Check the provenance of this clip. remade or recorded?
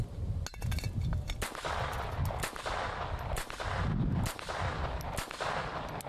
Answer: recorded